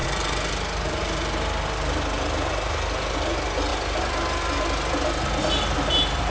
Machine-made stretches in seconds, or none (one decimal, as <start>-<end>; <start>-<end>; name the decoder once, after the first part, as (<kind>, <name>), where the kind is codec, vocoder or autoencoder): none